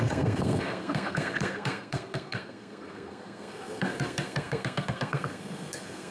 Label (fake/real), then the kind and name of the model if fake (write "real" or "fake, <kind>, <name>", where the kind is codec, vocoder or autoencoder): fake, codec, SNAC